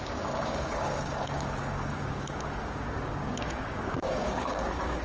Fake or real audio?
fake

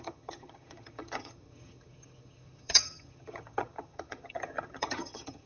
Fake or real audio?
fake